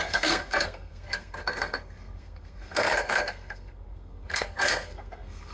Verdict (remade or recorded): remade